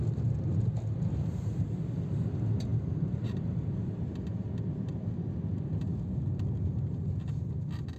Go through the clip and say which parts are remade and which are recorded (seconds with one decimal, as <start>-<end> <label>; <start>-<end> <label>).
0.0-8.0 recorded